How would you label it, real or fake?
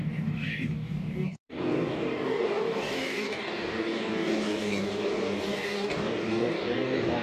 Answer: fake